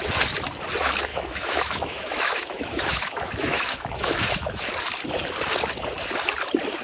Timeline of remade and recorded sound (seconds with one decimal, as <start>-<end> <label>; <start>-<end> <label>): 0.0-1.1 recorded; 1.1-4.7 remade; 4.7-6.8 recorded

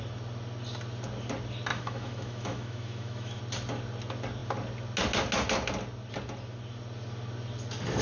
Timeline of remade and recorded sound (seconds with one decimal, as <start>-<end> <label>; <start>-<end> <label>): 0.0-1.7 recorded; 1.7-3.4 remade; 3.4-8.0 recorded

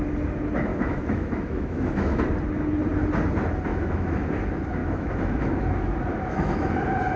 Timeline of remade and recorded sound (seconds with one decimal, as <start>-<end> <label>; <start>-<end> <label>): 0.0-0.7 recorded; 0.7-2.2 remade; 2.2-3.7 recorded; 3.7-4.3 remade; 4.3-4.8 recorded; 4.8-6.7 remade; 6.7-7.2 recorded

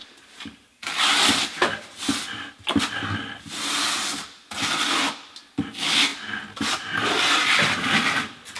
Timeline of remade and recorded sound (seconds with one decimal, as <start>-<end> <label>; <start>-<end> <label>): 0.0-8.6 recorded

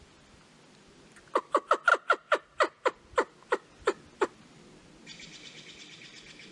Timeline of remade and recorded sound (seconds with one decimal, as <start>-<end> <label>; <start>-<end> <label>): 0.0-6.5 recorded